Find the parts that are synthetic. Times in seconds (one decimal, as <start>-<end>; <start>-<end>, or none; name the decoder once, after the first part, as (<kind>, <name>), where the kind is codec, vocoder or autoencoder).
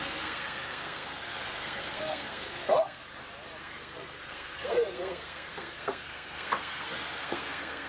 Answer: 0.0-3.0 (codec, SNAC); 3.6-7.9